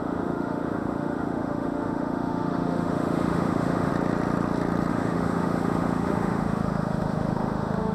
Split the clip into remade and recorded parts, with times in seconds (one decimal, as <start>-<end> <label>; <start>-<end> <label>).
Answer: 0.0-3.9 remade; 3.9-4.9 recorded; 4.9-7.9 remade